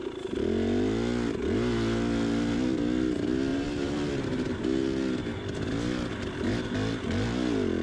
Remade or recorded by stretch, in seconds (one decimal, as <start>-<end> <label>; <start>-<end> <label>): 0.0-3.5 recorded; 3.5-4.6 remade; 4.6-7.8 recorded